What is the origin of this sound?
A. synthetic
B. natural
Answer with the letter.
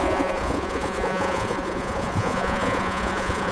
A